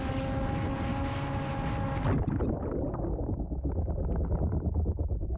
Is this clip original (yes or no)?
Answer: yes